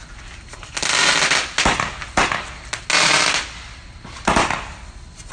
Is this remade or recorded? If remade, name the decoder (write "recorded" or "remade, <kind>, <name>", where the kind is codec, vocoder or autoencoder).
recorded